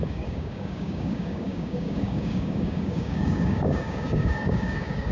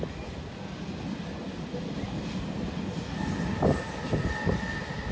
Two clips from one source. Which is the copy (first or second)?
first